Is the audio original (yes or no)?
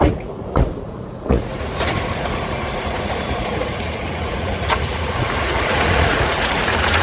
no